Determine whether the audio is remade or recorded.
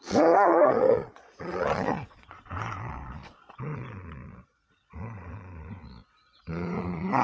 remade